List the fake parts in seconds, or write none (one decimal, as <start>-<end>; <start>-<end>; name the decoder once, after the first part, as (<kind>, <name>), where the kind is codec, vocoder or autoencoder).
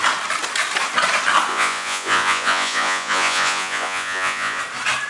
1.5-4.6 (vocoder, Vocos)